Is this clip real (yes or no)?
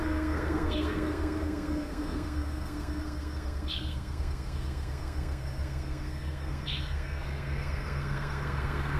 no